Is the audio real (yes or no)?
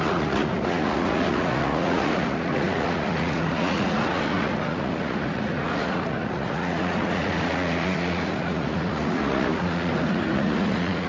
no